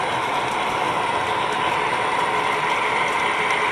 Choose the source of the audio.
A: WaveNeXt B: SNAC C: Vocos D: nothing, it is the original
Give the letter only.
D